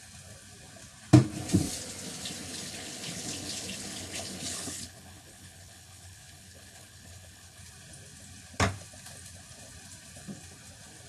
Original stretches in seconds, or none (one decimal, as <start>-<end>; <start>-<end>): 0.0-2.5; 7.6-11.1